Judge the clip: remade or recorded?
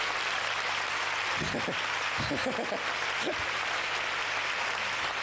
recorded